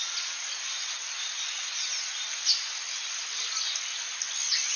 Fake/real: real